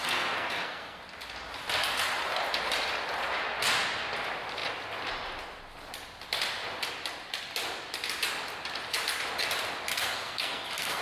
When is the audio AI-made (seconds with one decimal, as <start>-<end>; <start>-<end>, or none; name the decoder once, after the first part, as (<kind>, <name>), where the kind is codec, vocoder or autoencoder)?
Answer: 0.0-1.0 (codec, SNAC); 9.9-11.0